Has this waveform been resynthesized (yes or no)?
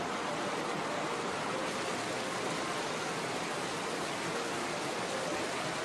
no